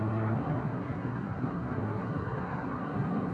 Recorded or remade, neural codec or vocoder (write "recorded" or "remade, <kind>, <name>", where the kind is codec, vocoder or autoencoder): remade, codec, SNAC